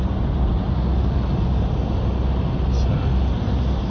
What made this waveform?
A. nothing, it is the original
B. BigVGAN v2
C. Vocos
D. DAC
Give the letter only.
A